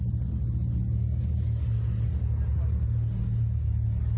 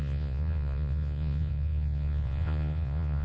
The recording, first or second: first